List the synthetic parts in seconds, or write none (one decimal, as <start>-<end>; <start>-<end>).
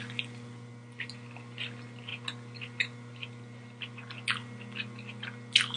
none